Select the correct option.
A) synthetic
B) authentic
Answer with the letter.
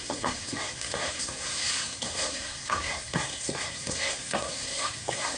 A